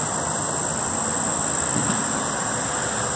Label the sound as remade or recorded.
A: recorded